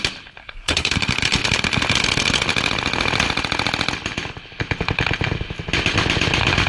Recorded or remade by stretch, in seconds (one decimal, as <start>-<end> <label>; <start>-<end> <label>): 0.0-0.4 recorded; 0.4-0.9 remade; 0.9-6.7 recorded